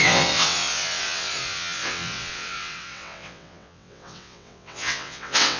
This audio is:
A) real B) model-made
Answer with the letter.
B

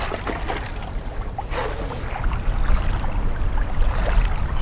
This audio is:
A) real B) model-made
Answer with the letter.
A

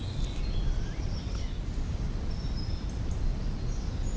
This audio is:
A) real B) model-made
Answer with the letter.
A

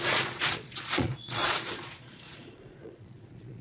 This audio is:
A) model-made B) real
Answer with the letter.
A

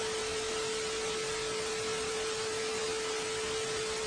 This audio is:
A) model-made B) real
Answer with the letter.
B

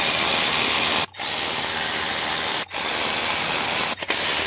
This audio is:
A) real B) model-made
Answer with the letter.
A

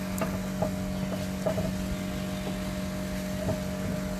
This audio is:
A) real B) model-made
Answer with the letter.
A